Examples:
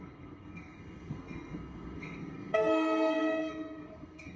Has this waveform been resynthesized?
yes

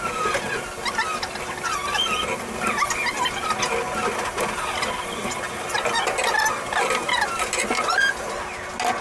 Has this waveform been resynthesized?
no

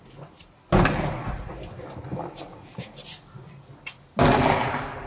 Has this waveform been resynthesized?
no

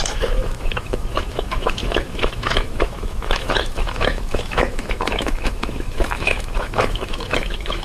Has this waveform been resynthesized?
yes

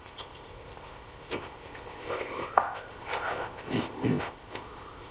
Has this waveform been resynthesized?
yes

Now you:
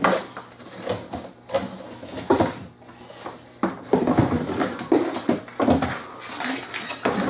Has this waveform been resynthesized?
no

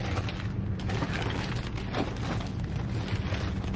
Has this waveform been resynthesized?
no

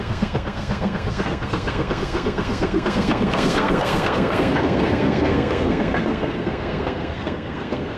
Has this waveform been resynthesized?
yes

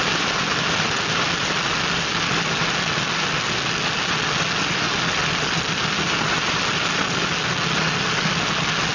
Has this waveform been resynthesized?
no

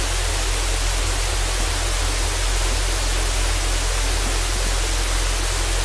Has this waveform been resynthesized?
no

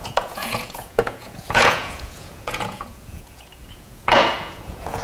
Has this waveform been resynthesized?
yes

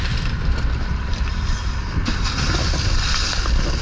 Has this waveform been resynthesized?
no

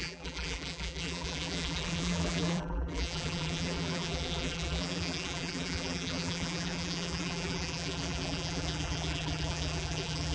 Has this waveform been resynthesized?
yes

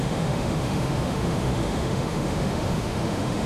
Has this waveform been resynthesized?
yes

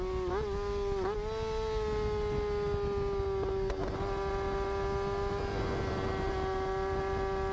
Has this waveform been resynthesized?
no